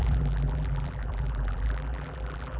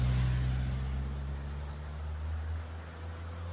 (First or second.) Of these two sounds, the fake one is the first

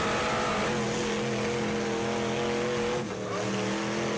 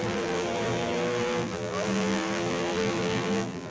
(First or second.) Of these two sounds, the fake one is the second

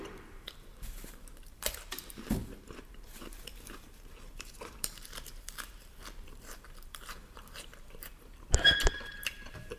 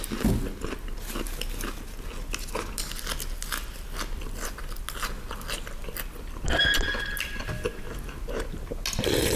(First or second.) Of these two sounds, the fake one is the first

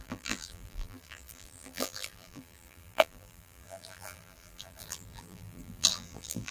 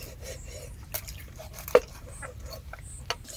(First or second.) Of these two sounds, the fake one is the first